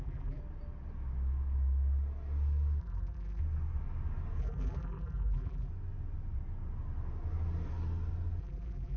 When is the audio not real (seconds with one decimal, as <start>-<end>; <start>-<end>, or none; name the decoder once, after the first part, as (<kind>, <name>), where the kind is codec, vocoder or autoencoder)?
0.0-0.4 (vocoder, BigVGAN v2); 2.8-3.4; 4.4-5.7; 8.4-9.0